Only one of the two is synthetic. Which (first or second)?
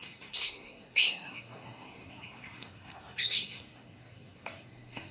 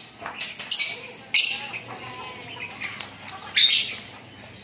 first